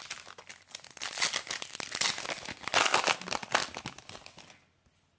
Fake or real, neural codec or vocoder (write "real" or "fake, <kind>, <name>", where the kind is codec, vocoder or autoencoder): real